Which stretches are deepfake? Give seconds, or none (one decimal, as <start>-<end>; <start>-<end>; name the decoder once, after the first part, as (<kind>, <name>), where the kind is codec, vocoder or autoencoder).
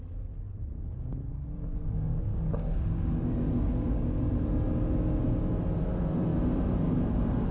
1.8-4.3 (codec, DAC)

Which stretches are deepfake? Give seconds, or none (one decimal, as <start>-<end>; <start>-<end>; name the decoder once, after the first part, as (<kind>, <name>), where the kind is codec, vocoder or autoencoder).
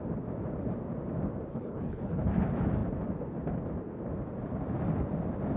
1.5-2.2 (codec, HILCodec)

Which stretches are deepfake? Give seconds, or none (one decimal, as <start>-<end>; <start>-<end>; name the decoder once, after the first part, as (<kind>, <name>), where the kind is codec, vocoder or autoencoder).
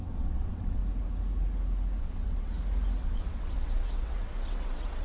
0.0-0.8 (vocoder, WaveNeXt); 2.0-2.5; 3.0-5.0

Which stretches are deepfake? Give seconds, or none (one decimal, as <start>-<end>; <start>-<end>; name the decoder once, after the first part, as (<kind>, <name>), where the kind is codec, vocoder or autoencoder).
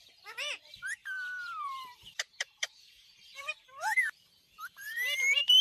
0.0-5.6 (vocoder, BigVGAN v2)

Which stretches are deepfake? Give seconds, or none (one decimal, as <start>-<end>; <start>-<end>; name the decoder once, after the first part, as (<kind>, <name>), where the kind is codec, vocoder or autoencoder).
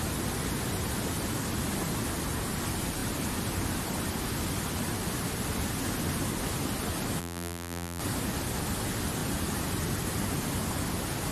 7.2-8.0 (vocoder, BigVGAN v2)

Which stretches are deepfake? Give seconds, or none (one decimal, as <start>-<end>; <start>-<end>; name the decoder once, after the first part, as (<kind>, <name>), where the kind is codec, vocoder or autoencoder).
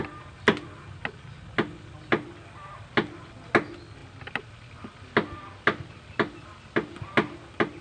none